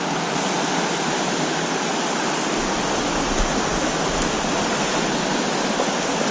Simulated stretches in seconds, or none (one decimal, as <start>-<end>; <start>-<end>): none

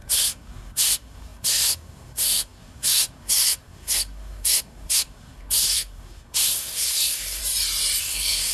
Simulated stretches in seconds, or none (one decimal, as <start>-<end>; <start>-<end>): 0.0-7.4; 8.0-8.5

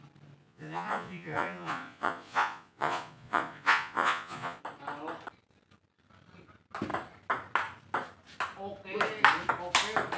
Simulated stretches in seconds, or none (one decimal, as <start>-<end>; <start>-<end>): 0.4-4.6